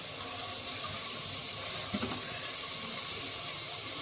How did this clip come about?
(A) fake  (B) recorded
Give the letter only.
B